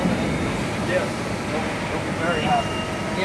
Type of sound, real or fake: real